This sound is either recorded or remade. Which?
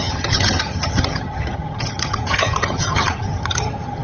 remade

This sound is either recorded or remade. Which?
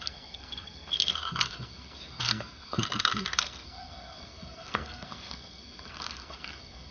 remade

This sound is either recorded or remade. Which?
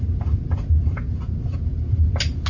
recorded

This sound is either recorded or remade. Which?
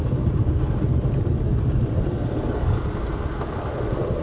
recorded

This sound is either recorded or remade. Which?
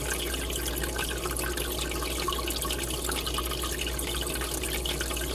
recorded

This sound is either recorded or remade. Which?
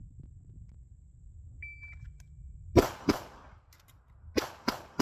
recorded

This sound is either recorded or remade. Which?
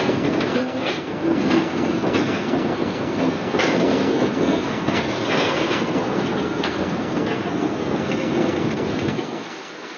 remade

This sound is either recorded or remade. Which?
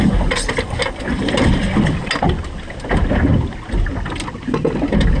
recorded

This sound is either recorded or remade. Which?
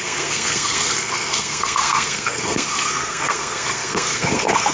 remade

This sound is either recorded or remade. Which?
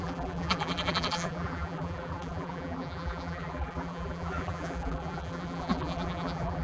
remade